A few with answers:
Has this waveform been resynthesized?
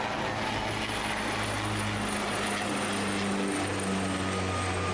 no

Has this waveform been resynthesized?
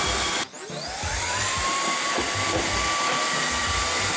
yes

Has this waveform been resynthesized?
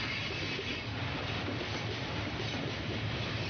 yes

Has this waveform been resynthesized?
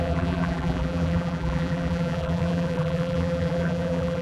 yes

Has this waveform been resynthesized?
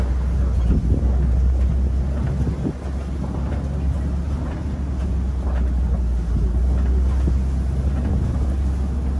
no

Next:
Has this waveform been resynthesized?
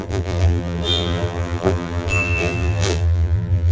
yes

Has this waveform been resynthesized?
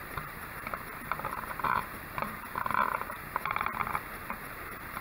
yes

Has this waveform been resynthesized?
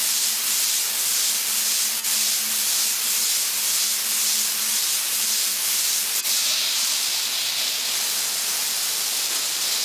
no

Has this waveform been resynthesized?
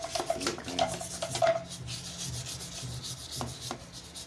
no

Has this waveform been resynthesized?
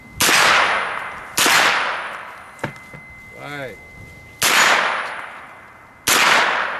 no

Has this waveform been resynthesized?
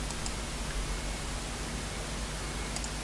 no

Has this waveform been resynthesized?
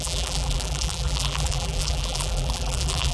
yes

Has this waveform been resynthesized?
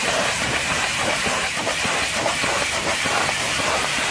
yes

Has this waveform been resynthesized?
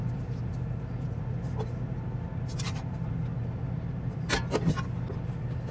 no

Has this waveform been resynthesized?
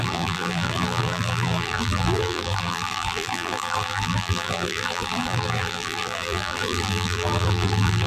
yes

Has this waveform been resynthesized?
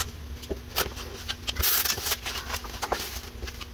no